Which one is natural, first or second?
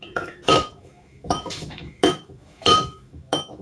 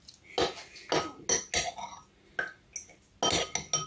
second